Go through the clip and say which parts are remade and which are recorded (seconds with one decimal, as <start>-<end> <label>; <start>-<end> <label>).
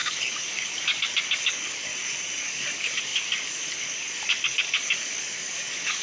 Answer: 0.0-1.9 remade; 1.9-2.4 recorded; 2.4-6.0 remade